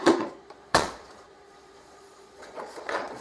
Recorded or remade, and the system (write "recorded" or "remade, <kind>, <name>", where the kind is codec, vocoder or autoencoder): remade, vocoder, Vocos